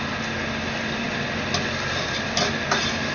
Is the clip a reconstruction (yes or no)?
no